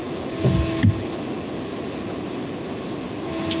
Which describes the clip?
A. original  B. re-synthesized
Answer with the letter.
A